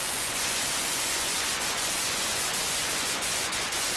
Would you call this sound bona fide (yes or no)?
no